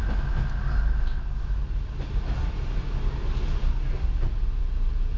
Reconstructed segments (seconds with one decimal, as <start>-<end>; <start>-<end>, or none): none